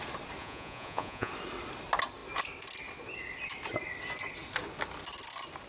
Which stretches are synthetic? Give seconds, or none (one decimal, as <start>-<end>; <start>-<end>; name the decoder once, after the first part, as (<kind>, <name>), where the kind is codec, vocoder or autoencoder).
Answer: 0.4-1.3 (vocoder, Vocos)